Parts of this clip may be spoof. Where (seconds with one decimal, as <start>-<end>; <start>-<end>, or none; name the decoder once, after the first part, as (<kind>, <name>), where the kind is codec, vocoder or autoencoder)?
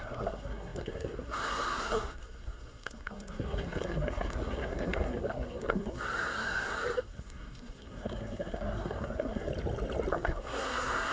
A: 0.0-9.5 (codec, SNAC); 10.1-11.1